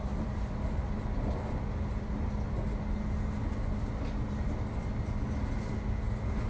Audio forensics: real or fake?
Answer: real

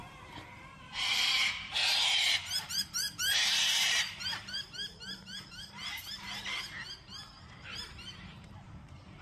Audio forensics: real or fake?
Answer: fake